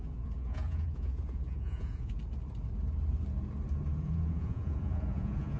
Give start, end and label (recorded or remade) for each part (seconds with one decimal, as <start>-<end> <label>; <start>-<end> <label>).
0.0-2.2 remade; 2.2-3.9 recorded; 3.9-5.6 remade